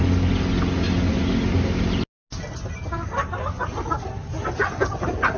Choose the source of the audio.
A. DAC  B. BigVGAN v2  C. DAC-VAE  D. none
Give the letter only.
D